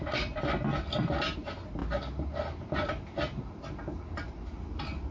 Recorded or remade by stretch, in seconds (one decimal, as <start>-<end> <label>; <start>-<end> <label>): 0.0-5.1 recorded